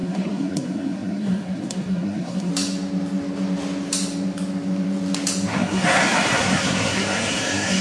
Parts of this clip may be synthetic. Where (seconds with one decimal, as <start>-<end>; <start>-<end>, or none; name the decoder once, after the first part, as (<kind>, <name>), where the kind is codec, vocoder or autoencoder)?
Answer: 0.0-2.5 (codec, SNAC); 5.5-7.8